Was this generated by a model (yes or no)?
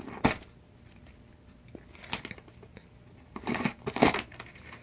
no